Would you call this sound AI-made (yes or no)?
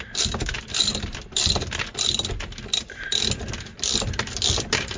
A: no